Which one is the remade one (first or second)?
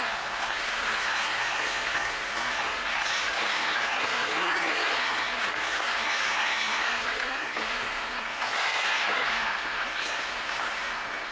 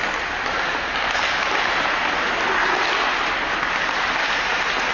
first